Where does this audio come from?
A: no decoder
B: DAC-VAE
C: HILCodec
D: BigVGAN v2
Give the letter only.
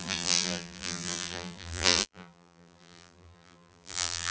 D